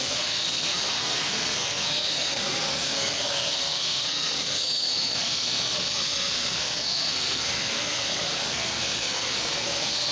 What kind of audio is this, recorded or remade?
remade